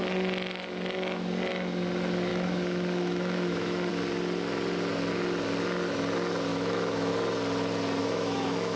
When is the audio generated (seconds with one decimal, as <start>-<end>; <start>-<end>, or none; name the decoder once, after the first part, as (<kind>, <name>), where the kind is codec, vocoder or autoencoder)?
2.3-3.9 (autoencoder, DAC-VAE); 6.5-7.1; 8.0-8.8